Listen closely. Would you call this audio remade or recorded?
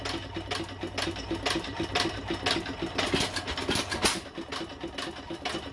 recorded